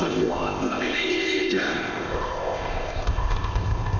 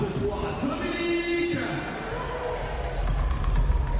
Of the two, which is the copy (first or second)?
first